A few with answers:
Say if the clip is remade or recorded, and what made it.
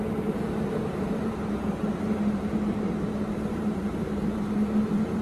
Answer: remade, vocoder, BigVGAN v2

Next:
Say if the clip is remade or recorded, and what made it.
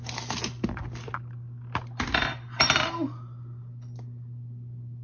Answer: recorded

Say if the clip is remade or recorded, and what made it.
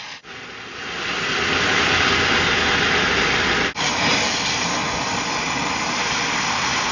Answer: recorded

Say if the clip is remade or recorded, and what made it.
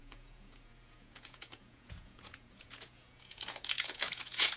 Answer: remade, vocoder, Vocos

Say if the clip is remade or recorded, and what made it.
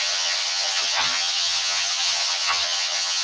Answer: remade, vocoder, HiFi-GAN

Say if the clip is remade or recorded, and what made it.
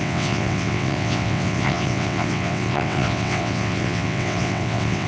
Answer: remade, vocoder, WaveNeXt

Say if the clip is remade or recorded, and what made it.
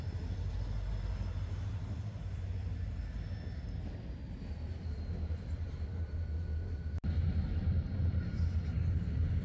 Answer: recorded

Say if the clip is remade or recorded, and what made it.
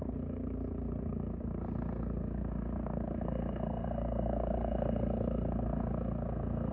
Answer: remade, codec, SNAC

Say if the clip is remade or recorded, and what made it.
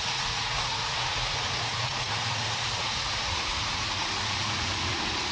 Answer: remade, vocoder, Vocos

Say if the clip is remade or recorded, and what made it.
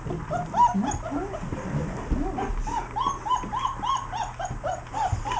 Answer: recorded